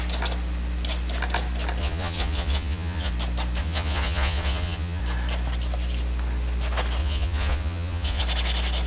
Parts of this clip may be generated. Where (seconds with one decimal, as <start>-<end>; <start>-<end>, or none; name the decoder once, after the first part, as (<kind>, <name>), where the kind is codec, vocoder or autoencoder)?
1.8-3.1 (vocoder, Vocos); 3.6-5.0; 7.0-8.2